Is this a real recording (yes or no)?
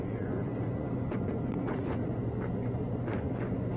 no